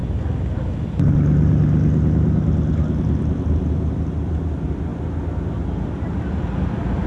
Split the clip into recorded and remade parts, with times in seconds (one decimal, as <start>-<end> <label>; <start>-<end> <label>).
0.0-7.1 recorded